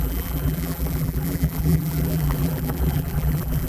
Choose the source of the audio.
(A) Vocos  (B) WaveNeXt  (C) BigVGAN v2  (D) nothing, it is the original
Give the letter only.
C